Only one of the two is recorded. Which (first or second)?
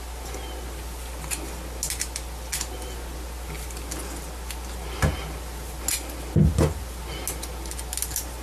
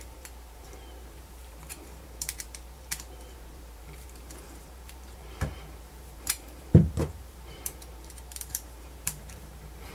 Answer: first